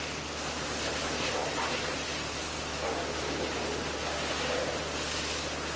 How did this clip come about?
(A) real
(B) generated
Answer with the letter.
A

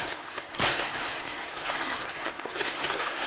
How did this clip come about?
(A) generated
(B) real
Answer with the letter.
A